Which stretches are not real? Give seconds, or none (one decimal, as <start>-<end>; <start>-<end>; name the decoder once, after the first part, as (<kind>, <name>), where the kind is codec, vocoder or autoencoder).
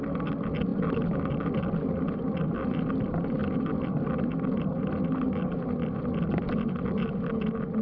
none